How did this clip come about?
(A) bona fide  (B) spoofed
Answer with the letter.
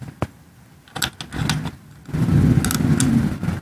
A